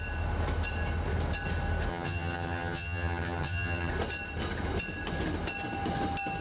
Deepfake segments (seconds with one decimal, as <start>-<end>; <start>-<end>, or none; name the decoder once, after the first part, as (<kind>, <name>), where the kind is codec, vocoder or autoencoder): 1.9-3.9 (vocoder, HiFi-GAN)